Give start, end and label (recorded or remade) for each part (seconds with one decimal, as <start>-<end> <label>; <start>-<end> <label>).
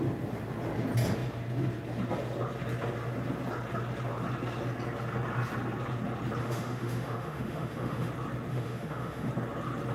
0.0-6.4 recorded; 6.4-8.1 remade; 8.1-8.5 recorded; 8.5-9.3 remade; 9.3-9.9 recorded